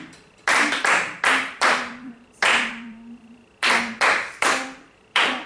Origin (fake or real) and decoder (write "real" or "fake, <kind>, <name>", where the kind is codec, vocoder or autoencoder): fake, vocoder, BigVGAN v2